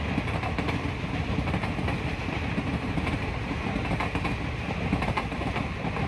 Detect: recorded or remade recorded